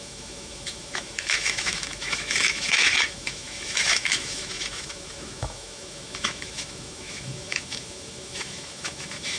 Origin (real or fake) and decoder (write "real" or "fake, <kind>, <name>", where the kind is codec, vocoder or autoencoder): fake, autoencoder, DAC-VAE